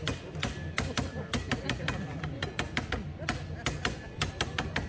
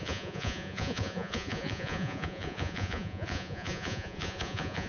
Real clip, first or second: first